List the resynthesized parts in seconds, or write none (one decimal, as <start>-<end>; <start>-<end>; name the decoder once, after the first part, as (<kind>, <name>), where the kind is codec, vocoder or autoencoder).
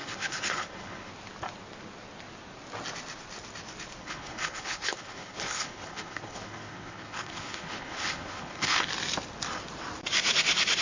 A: 0.0-1.1 (codec, HILCodec); 4.0-8.9